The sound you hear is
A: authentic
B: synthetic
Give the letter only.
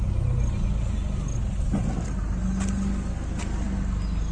A